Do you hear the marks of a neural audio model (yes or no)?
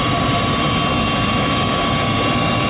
no